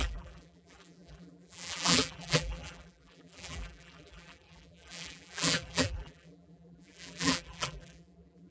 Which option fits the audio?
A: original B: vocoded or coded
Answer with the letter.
B